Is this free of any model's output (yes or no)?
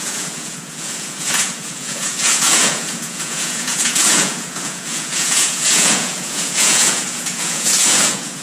no